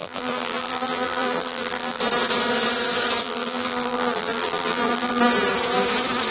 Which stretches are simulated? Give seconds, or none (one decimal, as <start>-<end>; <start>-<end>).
0.0-2.0; 3.2-5.2